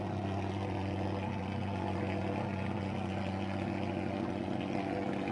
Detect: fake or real real